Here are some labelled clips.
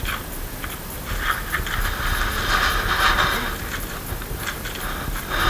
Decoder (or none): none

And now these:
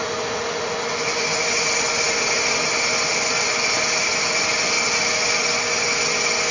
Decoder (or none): none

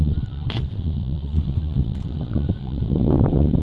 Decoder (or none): vocoder, WaveNeXt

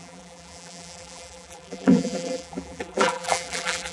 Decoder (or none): vocoder, BigVGAN v2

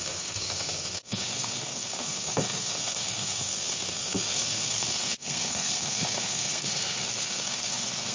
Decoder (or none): codec, SNAC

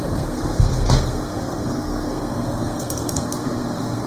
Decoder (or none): codec, SNAC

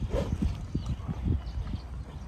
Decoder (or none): none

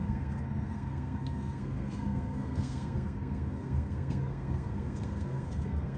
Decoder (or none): codec, SNAC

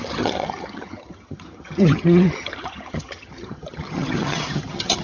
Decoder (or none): vocoder, HiFi-GAN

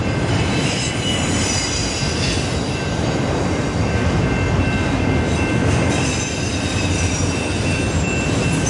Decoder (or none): none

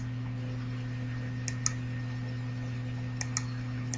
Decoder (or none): none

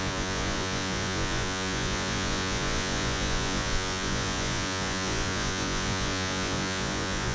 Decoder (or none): vocoder, Vocos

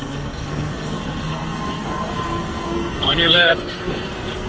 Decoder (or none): codec, SNAC